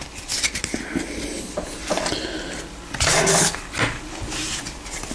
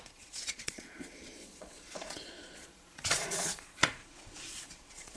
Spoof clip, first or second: second